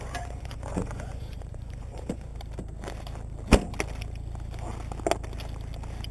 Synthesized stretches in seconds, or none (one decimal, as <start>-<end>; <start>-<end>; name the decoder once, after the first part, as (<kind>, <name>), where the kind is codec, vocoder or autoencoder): 0.0-2.3 (vocoder, Vocos)